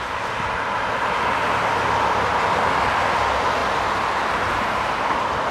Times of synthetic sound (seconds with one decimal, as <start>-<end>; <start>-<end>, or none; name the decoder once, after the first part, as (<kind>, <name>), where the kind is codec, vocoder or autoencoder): 2.3-3.0 (vocoder, BigVGAN v2)